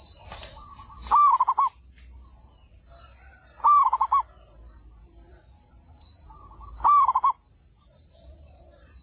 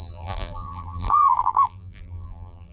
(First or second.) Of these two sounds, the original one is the first